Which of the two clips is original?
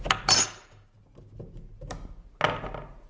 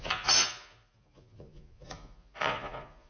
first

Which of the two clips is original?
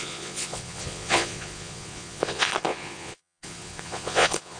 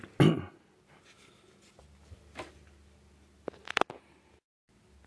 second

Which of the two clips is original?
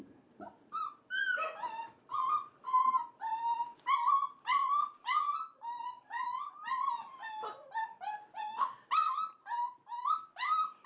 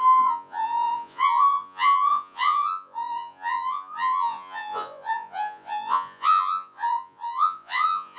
first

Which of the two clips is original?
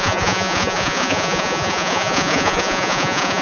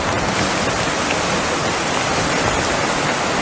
second